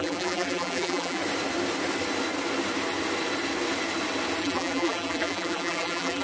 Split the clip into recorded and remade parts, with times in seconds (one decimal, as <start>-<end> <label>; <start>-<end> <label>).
0.0-1.2 remade; 1.2-4.4 recorded; 4.4-6.2 remade